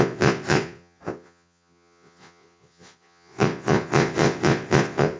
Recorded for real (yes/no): no